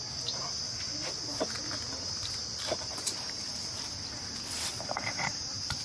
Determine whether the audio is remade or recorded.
recorded